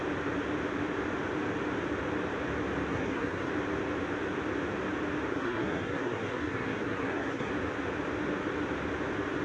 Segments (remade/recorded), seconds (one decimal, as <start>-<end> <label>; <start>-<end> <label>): 0.0-2.9 recorded; 2.9-3.5 remade; 3.5-5.3 recorded; 5.3-7.5 remade; 7.5-9.4 recorded